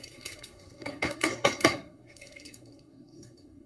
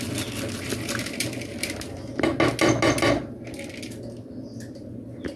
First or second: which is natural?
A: second